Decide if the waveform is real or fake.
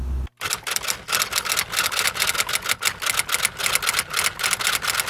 real